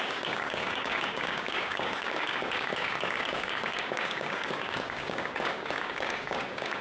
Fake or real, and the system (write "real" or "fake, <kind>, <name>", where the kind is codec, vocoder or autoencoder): fake, codec, DAC